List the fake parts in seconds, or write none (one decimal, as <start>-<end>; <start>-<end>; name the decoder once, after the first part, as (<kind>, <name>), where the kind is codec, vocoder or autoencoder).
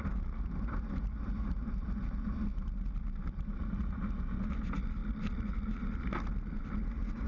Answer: none